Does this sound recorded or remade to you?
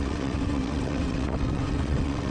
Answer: remade